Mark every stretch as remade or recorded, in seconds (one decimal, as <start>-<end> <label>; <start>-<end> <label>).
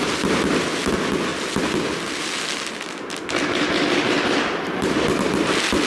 0.0-5.9 recorded